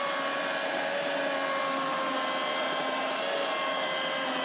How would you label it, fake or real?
real